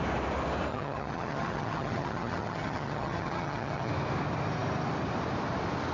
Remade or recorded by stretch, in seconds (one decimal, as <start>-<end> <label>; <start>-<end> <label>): 0.0-0.7 recorded; 0.7-3.9 remade; 3.9-5.9 recorded